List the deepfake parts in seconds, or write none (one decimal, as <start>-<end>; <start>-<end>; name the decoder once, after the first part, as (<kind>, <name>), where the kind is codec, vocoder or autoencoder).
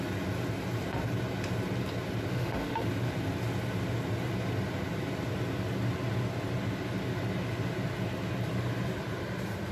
2.3-2.9 (autoencoder, DAC-VAE)